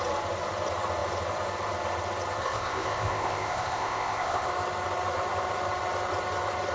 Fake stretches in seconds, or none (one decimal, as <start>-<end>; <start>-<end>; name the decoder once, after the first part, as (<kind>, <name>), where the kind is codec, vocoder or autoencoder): 2.4-4.5 (codec, ZipCodec)